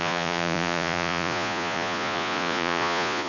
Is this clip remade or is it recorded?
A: remade